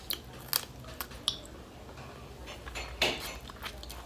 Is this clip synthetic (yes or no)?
no